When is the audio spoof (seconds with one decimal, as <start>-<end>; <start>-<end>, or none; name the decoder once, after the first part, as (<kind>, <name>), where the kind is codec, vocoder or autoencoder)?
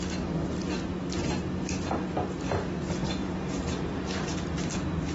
3.2-4.5 (vocoder, BigVGAN v2)